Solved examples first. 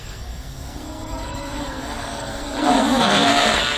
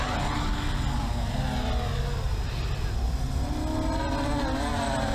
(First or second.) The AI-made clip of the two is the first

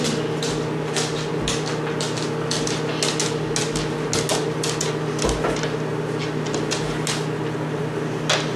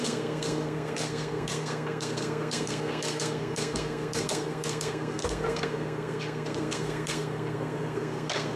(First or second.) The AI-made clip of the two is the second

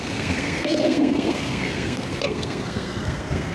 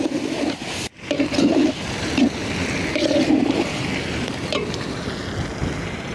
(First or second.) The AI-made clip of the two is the first